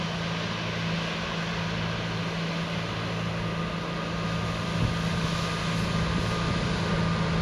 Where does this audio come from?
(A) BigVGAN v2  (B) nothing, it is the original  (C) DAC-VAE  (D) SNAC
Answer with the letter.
B